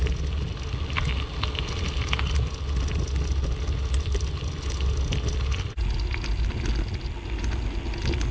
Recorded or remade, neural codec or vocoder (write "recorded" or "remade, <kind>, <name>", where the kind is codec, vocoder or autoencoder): recorded